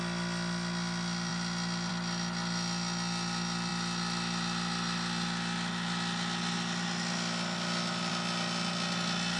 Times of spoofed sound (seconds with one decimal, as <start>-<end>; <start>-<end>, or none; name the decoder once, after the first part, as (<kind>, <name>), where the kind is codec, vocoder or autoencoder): none